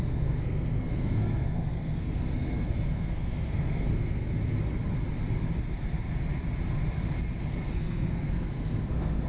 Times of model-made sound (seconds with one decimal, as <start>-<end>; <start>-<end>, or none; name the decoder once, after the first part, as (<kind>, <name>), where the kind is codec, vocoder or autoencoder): 0.0-4.2 (codec, SNAC); 7.4-9.3